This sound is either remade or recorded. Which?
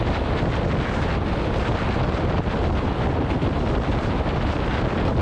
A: recorded